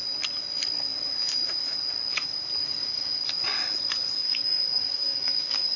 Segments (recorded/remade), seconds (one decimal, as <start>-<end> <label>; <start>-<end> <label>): 0.0-2.6 recorded; 2.6-3.2 remade; 3.2-4.2 recorded; 4.2-5.8 remade